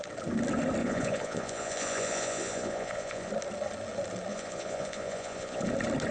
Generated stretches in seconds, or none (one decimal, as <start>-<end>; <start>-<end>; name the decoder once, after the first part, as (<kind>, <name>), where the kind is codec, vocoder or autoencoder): 0.8-3.3 (vocoder, Vocos); 4.3-5.6

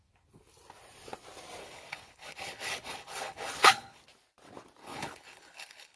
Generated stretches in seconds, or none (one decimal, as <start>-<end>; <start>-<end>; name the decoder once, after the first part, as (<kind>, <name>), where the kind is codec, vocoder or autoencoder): 1.6-4.0 (codec, HILCodec); 4.8-6.0

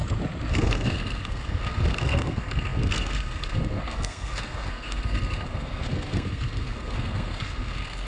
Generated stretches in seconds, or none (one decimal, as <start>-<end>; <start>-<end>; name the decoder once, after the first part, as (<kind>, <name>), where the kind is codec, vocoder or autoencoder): 0.5-8.1 (codec, SNAC)

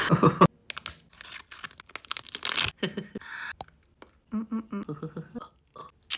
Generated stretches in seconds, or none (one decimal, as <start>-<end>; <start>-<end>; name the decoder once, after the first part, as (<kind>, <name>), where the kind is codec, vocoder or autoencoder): none

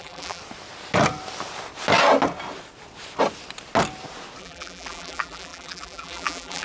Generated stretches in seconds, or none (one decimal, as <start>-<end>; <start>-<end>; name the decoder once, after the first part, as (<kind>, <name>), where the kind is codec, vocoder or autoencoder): 0.0-0.4 (vocoder, BigVGAN v2); 4.4-6.6